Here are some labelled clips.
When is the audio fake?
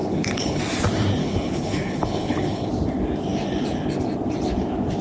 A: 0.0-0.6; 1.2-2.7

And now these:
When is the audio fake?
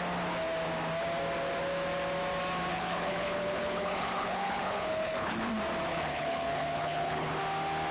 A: 2.7-5.5; 5.9-7.4